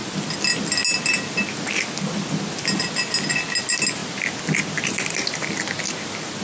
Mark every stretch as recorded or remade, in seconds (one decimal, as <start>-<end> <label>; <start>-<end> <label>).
0.0-6.4 recorded